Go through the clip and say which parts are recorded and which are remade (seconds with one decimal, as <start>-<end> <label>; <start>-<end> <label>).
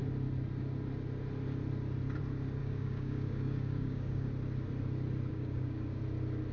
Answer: 0.0-2.6 recorded; 2.6-4.3 remade; 4.3-5.3 recorded; 5.3-6.0 remade; 6.0-6.5 recorded